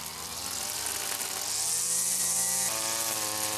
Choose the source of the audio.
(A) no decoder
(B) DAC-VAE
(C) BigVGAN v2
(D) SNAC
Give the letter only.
A